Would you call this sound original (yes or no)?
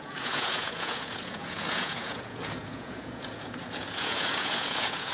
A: no